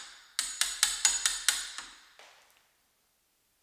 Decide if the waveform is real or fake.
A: real